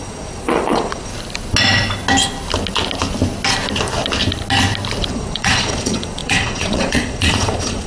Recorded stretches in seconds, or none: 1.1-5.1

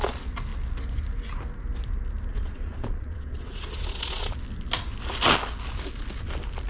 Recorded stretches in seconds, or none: 0.0-2.3; 4.3-6.7

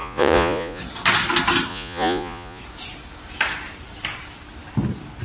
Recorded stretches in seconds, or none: 0.8-1.7; 2.6-5.2

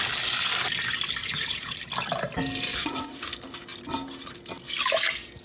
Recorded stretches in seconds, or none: 0.0-1.2; 1.8-2.7; 3.3-5.4

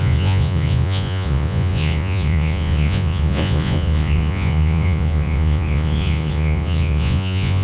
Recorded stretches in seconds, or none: none

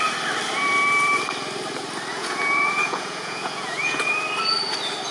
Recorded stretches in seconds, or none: 0.0-2.1; 4.1-5.1